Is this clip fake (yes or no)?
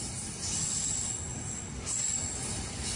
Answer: no